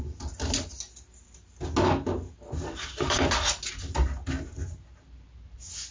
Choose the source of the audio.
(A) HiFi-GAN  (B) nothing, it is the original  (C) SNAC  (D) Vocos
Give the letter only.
B